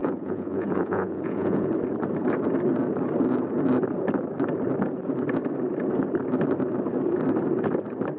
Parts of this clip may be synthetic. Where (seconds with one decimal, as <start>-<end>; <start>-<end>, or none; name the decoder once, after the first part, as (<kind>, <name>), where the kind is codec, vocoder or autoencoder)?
0.0-1.7 (vocoder, Vocos)